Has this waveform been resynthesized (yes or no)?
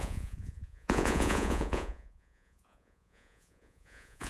yes